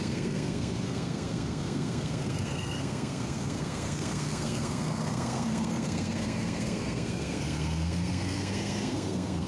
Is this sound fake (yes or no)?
yes